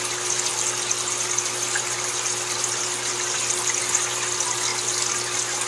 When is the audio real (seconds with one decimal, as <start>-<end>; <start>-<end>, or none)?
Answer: 0.0-0.5; 3.8-5.7